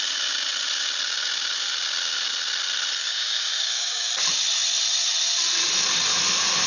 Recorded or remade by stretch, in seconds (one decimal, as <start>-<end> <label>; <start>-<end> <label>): 0.0-3.0 recorded; 3.0-4.1 remade; 4.1-6.7 recorded